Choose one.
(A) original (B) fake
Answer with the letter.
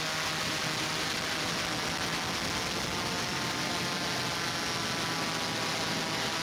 A